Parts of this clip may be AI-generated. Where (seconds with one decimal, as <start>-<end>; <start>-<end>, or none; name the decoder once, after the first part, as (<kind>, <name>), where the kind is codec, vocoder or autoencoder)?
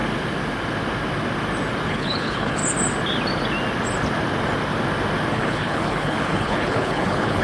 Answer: 1.9-2.6 (codec, HILCodec); 5.3-7.4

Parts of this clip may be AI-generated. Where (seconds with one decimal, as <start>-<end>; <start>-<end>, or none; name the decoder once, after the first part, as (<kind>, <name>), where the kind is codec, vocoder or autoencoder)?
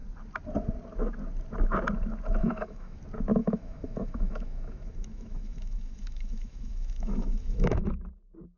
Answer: 2.4-3.0 (autoencoder, DAC-VAE); 3.4-7.9